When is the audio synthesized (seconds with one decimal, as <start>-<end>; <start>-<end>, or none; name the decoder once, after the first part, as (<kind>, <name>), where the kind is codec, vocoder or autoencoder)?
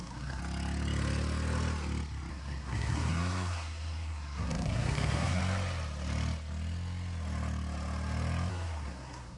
0.0-0.4 (codec, SNAC); 2.3-5.4; 8.5-9.4